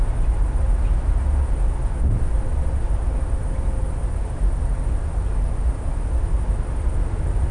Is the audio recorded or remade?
recorded